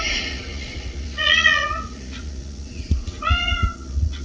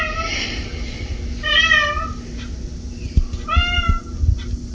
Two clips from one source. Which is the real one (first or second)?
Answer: second